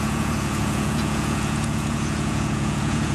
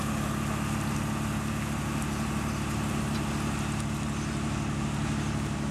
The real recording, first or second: second